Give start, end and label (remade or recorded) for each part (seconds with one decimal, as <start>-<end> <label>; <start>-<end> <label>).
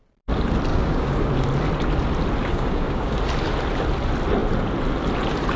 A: 0.0-0.7 recorded; 0.7-1.3 remade; 1.3-2.4 recorded; 2.4-3.2 remade; 3.2-5.6 recorded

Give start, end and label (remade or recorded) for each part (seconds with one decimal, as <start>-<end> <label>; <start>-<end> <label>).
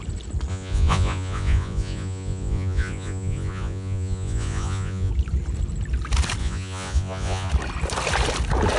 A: 0.0-0.5 recorded; 0.5-5.1 remade; 5.1-6.4 recorded; 6.4-7.5 remade; 7.5-8.8 recorded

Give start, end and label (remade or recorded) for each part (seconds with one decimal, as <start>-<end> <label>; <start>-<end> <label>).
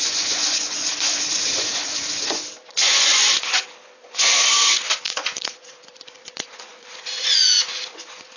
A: 0.0-8.4 remade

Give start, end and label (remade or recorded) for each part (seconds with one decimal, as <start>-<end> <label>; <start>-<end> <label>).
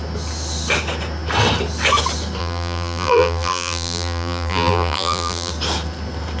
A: 0.0-2.4 recorded; 2.4-5.5 remade; 5.5-6.4 recorded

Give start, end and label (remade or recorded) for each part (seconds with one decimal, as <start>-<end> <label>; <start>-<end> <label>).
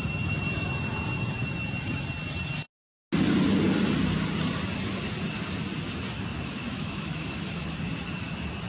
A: 0.0-6.3 recorded; 6.3-7.8 remade; 7.8-8.7 recorded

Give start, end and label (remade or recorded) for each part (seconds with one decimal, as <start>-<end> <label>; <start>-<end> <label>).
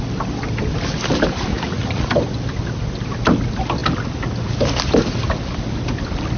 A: 0.0-1.5 recorded; 1.5-2.1 remade; 2.1-6.4 recorded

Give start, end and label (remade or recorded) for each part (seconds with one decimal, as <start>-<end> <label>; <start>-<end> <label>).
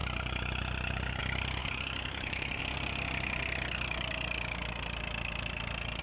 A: 0.0-1.2 remade; 1.2-1.6 recorded; 1.6-2.6 remade; 2.6-6.0 recorded